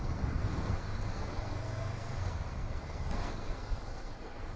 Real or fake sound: fake